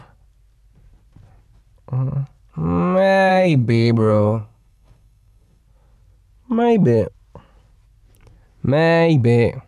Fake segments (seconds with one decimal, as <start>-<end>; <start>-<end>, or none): 3.3-5.6